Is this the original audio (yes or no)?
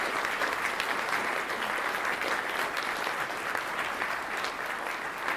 yes